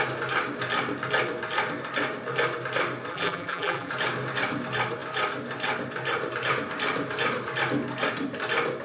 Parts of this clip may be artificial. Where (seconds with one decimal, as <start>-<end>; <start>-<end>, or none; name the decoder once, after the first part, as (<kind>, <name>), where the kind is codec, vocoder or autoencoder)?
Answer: 3.1-3.9 (vocoder, BigVGAN v2)